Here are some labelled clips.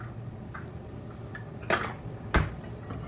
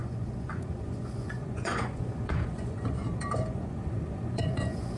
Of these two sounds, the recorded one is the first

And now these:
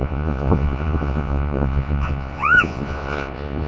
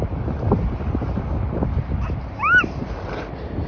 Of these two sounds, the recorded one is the second